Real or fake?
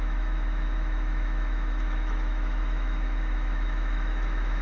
fake